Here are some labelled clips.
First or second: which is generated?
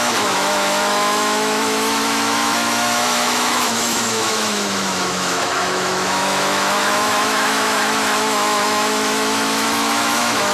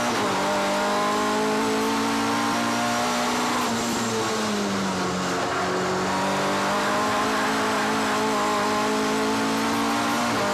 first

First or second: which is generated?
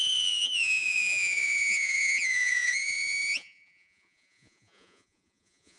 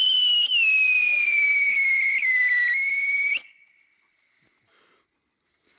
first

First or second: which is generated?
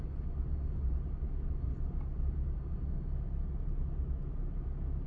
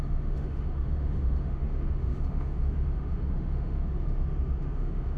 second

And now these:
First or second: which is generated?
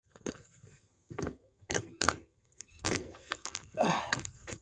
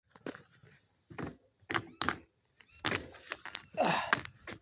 first